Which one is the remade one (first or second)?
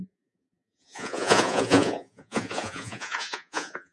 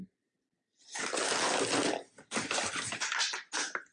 first